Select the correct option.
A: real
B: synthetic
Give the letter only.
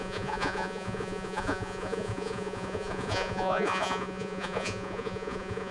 B